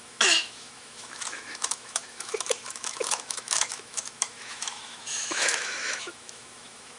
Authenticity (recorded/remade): remade